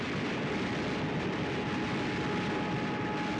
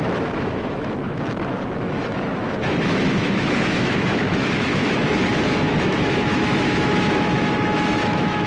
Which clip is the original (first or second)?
first